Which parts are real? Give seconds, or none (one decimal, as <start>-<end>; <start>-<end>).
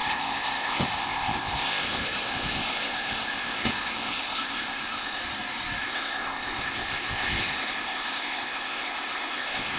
5.2-5.8